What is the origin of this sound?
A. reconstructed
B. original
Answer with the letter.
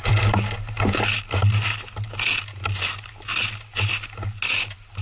B